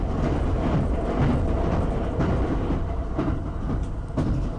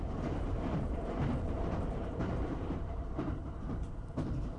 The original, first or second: first